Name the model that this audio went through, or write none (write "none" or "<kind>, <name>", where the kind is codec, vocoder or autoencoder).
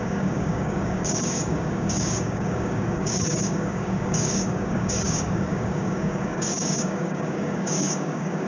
codec, DAC